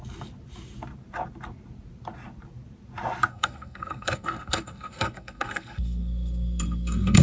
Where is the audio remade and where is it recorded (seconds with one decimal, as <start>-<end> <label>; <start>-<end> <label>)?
0.0-3.3 recorded; 3.3-7.2 remade